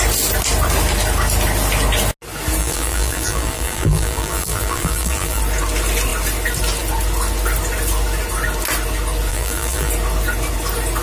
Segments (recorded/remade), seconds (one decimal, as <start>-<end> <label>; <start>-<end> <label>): 0.0-2.6 recorded; 2.6-5.4 remade; 5.4-9.3 recorded; 9.3-9.9 remade; 9.9-11.0 recorded